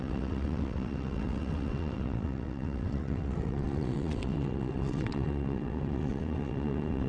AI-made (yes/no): yes